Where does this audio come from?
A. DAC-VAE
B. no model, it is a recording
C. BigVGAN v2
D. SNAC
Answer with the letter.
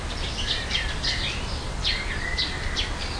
C